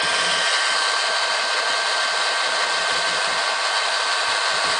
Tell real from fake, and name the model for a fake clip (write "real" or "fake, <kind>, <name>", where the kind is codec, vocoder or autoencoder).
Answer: real